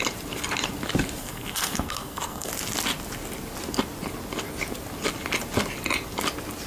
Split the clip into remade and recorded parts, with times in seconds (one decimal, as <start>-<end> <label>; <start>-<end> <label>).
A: 0.0-1.2 recorded; 1.2-2.5 remade; 2.5-6.7 recorded